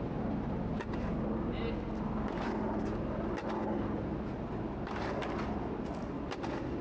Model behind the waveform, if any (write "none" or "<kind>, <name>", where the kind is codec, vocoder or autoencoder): none